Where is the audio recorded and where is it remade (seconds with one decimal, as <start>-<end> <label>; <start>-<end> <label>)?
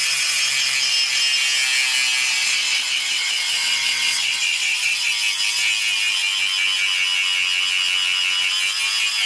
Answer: 0.0-2.4 recorded; 2.4-5.1 remade; 5.1-9.3 recorded